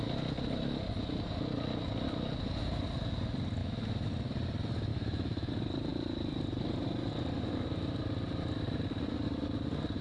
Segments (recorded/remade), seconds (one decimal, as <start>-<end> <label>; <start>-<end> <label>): 0.0-3.6 recorded; 3.6-4.1 remade; 4.1-4.9 recorded; 4.9-5.5 remade; 5.5-10.0 recorded